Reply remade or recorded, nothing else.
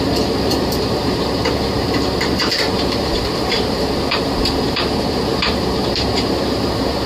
remade